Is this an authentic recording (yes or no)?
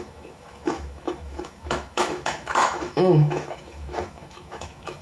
no